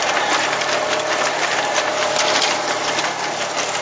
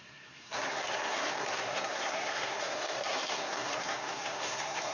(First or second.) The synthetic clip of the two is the second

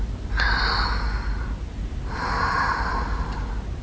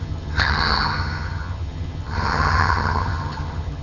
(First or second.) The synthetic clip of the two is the second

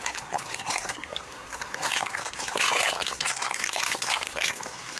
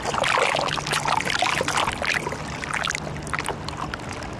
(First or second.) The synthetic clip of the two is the first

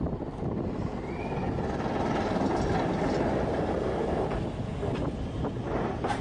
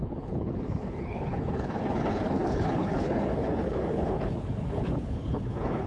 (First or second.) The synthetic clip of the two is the second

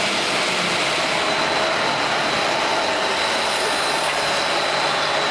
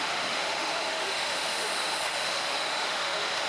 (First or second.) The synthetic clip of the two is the second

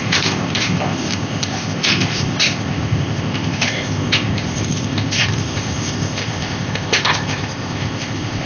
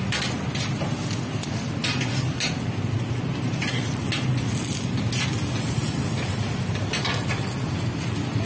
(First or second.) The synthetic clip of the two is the first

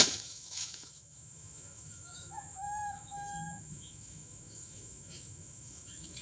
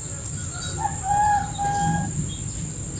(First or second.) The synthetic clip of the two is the first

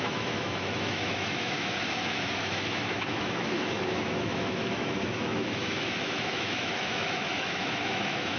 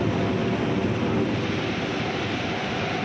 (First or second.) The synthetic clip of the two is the first